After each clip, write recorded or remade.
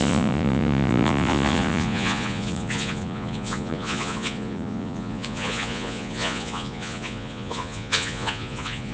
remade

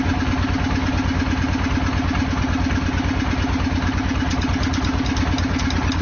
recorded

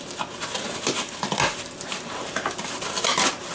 recorded